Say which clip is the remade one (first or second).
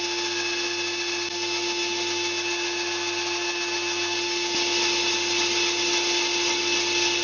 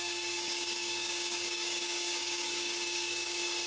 second